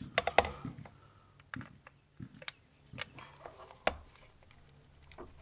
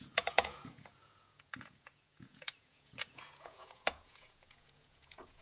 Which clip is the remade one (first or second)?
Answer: second